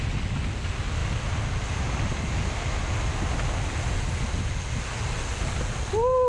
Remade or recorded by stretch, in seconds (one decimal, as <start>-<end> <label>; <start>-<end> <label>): 0.0-6.3 recorded